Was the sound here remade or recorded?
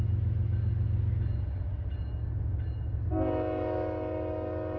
recorded